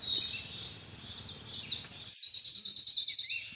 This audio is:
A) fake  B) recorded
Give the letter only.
B